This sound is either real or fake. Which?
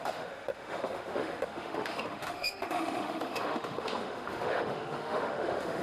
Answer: fake